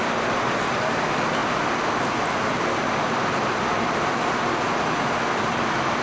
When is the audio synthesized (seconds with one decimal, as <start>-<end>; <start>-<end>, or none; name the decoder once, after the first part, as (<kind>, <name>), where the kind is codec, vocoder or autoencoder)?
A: 0.0-1.4 (vocoder, BigVGAN v2); 5.0-6.0